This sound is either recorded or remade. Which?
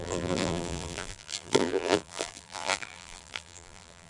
remade